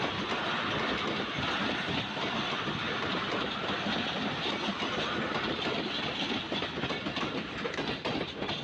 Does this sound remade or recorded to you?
recorded